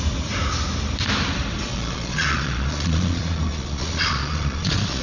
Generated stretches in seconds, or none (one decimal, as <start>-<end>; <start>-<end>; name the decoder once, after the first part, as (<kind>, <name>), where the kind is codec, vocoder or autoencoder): 1.7-5.0 (vocoder, Vocos)